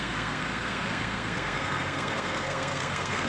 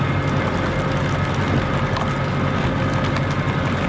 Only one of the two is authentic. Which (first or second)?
second